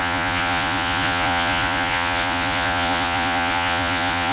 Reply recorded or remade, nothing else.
remade